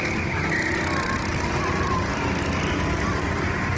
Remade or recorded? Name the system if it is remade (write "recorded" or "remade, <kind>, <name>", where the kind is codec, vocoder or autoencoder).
recorded